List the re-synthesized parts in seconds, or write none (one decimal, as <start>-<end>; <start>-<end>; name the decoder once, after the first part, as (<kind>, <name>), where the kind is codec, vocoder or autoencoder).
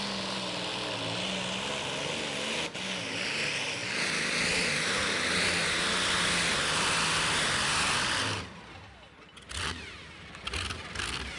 none